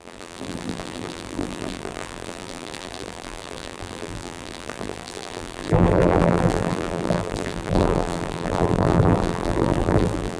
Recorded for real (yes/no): no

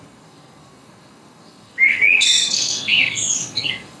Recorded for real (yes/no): no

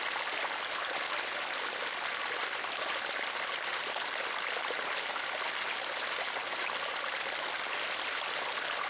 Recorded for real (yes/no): yes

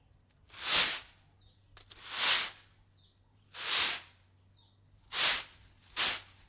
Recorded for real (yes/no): yes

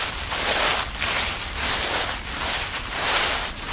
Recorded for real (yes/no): yes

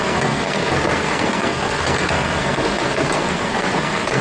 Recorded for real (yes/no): no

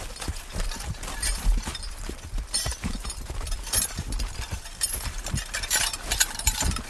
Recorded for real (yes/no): no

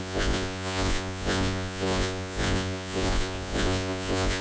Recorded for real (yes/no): no